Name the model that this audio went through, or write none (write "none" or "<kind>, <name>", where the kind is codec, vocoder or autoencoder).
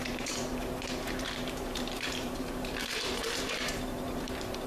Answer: vocoder, BigVGAN v2